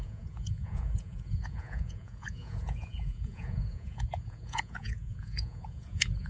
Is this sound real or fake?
fake